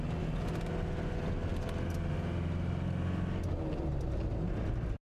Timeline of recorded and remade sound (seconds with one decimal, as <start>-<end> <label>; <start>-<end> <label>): 0.0-5.1 recorded